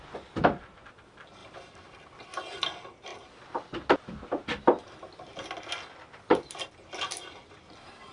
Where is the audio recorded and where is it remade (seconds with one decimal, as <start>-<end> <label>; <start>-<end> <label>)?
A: 0.0-8.1 recorded